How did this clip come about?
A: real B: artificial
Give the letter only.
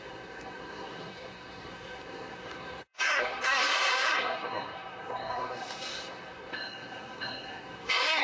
B